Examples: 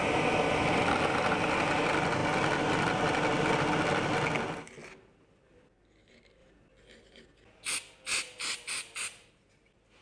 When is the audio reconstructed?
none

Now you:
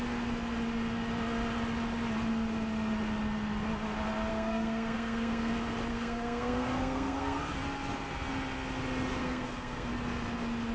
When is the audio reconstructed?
4.3-5.5 (codec, SNAC); 5.9-7.4; 9.2-9.9

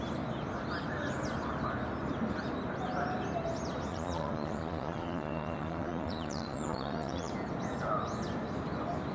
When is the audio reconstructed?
3.9-7.3 (vocoder, Vocos)

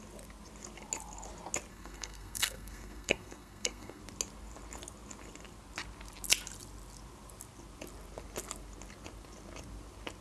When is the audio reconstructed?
1.7-4.0 (codec, SNAC)